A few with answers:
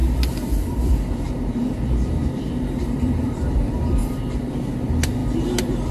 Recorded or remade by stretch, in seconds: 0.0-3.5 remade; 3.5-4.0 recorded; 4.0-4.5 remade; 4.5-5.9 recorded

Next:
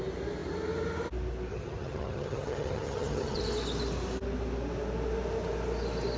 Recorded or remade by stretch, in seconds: 0.0-1.5 recorded; 1.5-3.4 remade; 3.4-6.2 recorded

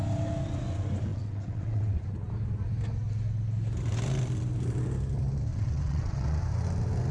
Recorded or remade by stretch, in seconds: 0.0-1.1 recorded; 1.1-2.0 remade; 2.0-5.5 recorded; 5.5-6.4 remade; 6.4-7.1 recorded

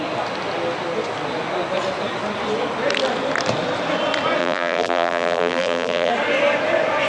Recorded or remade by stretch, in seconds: 0.0-4.4 recorded; 4.4-6.1 remade; 6.1-7.1 recorded

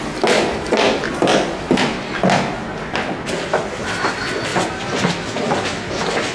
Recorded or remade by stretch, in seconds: 0.0-6.3 recorded